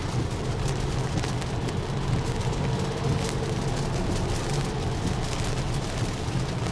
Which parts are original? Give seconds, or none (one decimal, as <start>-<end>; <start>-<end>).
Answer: 0.0-6.7